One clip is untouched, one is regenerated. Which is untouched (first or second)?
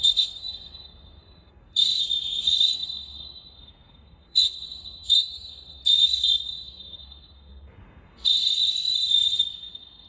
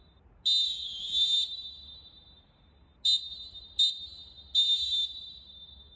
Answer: second